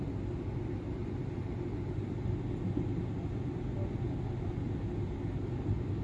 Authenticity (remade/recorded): recorded